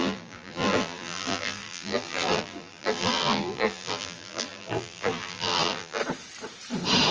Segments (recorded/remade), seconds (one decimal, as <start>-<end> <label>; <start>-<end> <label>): 0.0-6.0 remade; 6.0-7.1 recorded